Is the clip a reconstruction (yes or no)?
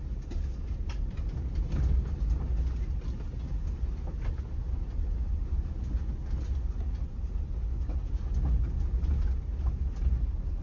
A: no